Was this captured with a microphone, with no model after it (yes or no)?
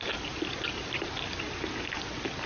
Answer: yes